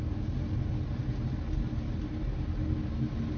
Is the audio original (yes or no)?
yes